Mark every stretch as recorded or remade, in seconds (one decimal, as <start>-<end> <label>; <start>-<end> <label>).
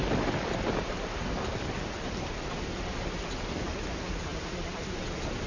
0.0-5.5 recorded